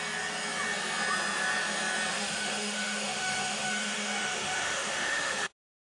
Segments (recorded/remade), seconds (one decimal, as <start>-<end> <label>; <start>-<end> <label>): 0.0-2.1 recorded; 2.1-5.5 remade; 5.5-6.0 recorded